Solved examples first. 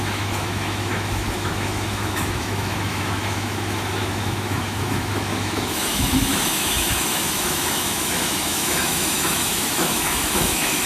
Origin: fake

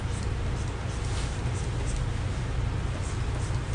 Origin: real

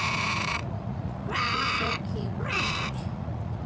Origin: fake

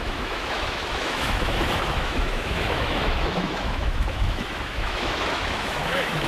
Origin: fake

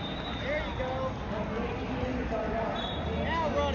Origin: real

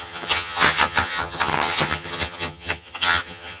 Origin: fake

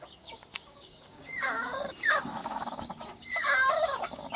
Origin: fake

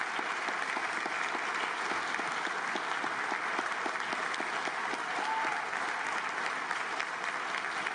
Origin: real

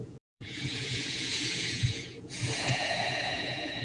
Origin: fake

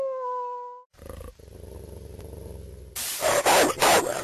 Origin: real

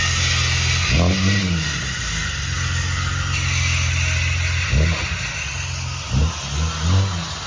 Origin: real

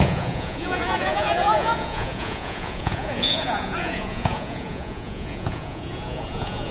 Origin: fake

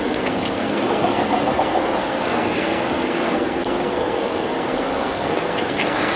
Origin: fake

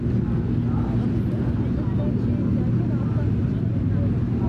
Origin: real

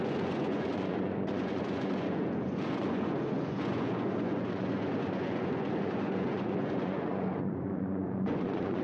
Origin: fake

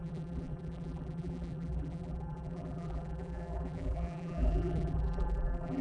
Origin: fake